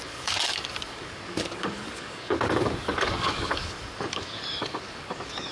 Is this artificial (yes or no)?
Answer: yes